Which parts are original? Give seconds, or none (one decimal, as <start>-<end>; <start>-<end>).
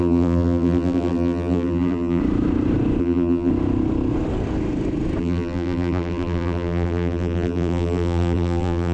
2.2-3.0; 3.5-5.2